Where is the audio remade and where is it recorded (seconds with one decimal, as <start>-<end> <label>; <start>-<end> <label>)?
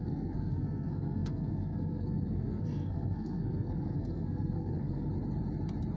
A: 0.0-5.1 remade; 5.1-6.0 recorded